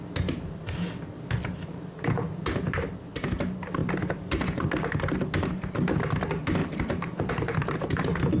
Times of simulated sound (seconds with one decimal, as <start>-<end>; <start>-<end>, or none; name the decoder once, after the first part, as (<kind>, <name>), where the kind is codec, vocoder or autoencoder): 6.6-7.3 (vocoder, BigVGAN v2)